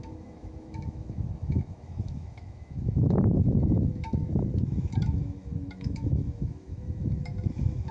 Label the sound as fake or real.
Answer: fake